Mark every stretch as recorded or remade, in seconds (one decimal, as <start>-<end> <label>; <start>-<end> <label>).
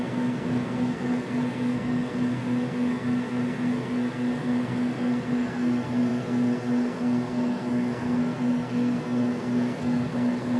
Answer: 0.0-10.6 remade